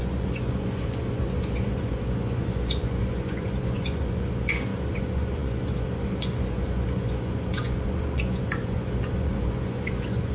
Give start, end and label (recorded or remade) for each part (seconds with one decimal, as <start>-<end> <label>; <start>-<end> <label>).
0.0-10.3 remade